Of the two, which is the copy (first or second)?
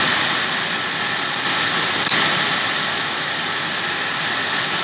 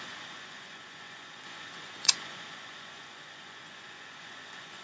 second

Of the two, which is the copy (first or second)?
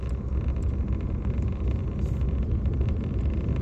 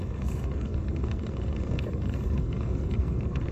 second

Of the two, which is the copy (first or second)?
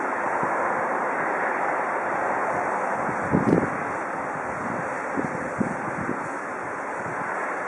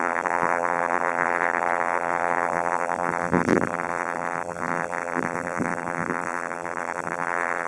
second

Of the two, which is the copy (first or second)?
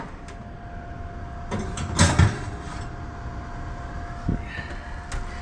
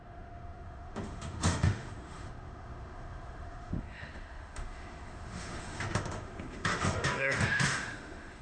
second